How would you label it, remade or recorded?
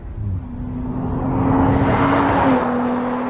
recorded